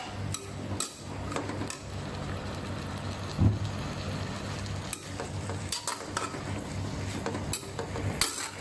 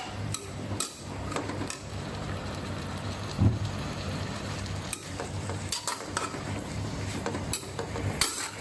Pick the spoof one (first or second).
second